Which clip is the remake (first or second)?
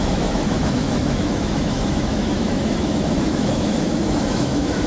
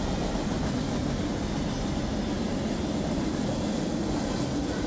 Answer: first